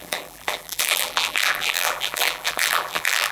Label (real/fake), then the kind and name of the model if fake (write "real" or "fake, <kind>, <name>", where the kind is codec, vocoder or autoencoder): fake, vocoder, BigVGAN v2